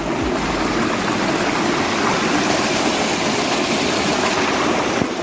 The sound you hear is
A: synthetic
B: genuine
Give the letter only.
B